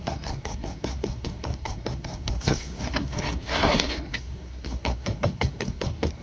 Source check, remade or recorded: remade